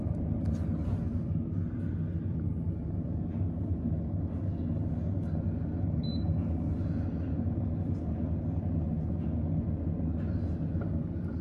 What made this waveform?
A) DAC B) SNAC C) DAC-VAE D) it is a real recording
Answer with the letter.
D